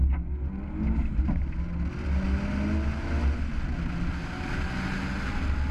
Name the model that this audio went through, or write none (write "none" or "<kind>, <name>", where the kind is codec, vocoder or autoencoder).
none